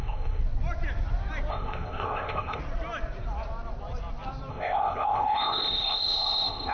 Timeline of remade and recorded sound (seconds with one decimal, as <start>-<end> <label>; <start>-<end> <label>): 0.0-0.4 remade; 0.4-1.5 recorded; 1.5-2.6 remade; 2.6-4.5 recorded; 4.5-6.7 remade